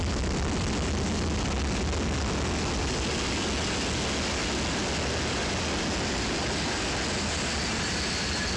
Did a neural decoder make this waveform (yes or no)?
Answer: no